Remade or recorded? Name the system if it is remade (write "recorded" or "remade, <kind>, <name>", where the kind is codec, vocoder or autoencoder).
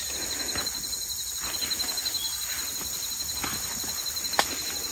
recorded